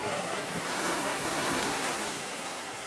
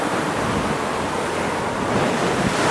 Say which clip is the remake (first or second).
first